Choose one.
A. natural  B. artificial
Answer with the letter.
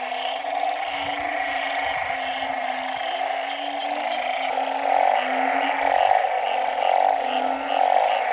A